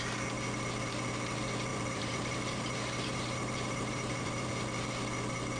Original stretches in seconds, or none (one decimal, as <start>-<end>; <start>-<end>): 0.0-1.7; 4.5-5.6

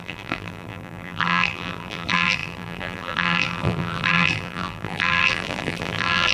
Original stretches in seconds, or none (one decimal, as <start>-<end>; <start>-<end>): none

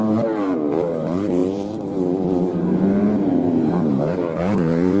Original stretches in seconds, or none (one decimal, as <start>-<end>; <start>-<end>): none

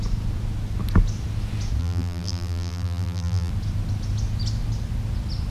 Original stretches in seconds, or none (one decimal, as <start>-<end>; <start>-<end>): 0.0-1.8; 3.5-5.5

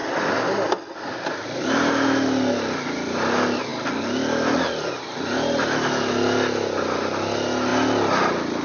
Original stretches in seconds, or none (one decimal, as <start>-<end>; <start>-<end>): 0.0-8.6

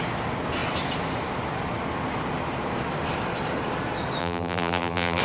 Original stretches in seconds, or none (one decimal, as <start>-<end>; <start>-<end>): 0.0-4.2